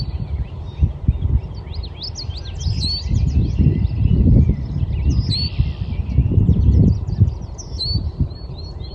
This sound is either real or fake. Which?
real